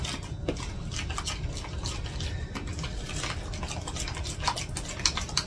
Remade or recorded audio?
recorded